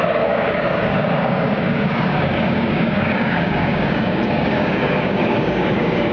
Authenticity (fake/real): fake